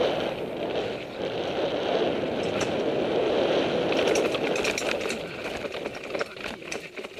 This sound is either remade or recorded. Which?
recorded